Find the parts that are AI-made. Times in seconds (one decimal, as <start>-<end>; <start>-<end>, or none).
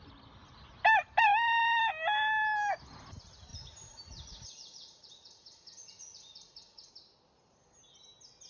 3.5-6.9